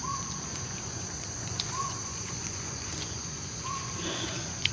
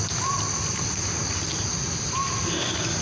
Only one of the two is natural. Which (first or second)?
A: second